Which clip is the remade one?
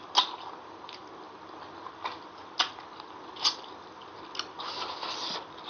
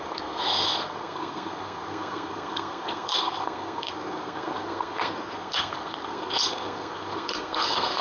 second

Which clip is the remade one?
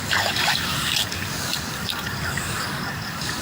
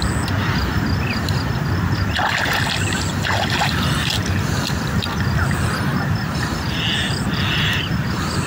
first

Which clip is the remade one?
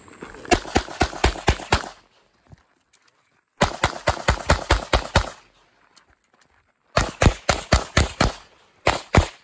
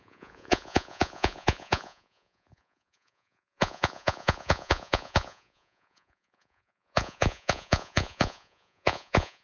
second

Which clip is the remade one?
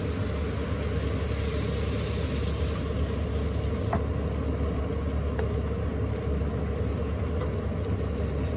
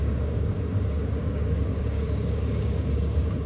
second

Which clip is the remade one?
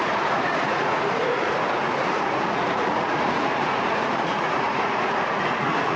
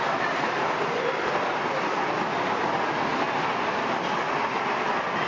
first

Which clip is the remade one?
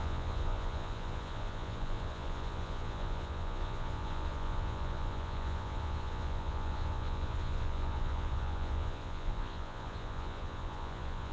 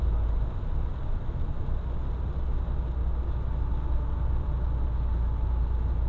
first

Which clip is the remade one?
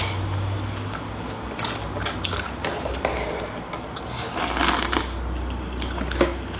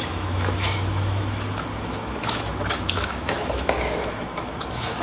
second